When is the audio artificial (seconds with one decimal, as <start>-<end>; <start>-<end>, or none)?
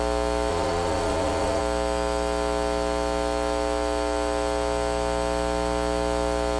0.5-1.6